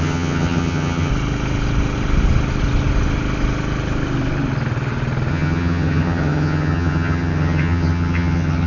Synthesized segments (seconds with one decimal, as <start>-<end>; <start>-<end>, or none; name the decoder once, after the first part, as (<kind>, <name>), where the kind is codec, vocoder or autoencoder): 0.0-1.1 (vocoder, HiFi-GAN); 5.3-8.7